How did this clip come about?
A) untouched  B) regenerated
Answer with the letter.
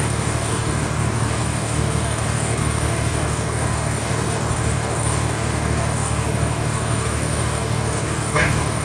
B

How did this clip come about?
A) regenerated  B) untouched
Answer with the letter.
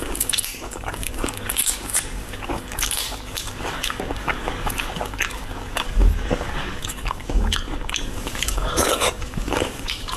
A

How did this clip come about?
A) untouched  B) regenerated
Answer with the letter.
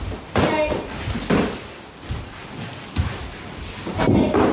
A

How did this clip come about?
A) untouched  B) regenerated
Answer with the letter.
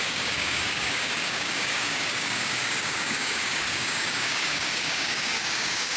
B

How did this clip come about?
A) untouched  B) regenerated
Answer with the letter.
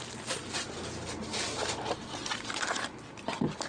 A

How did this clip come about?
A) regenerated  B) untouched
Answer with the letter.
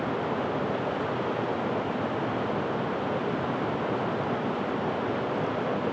B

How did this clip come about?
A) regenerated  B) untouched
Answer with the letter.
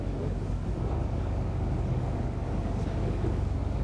A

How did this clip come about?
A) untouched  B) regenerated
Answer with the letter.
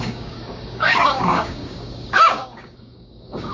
B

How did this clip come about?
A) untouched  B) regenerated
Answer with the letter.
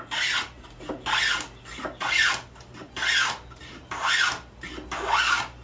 A